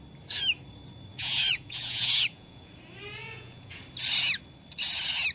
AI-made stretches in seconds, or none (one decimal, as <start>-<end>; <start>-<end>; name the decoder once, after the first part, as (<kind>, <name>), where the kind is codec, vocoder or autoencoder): 1.1-2.7 (vocoder, Vocos); 3.2-3.8